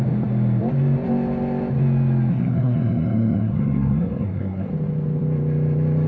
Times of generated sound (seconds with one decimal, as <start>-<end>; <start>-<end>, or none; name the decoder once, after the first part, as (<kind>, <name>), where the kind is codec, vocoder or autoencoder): 2.3-4.7 (codec, SNAC)